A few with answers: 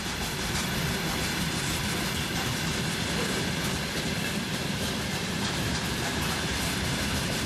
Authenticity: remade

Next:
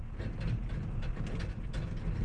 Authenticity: recorded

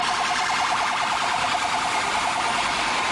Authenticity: recorded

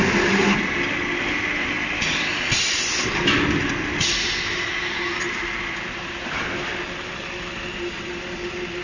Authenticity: recorded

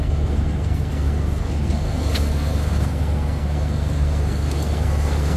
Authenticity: remade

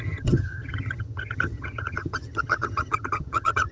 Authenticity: remade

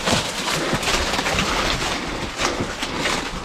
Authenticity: recorded